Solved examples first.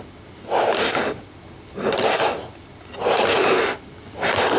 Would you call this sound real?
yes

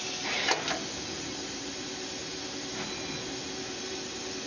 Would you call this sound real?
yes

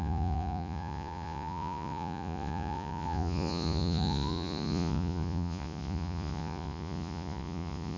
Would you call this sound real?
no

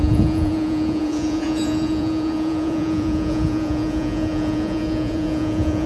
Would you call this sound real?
no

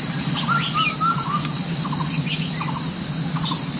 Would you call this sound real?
yes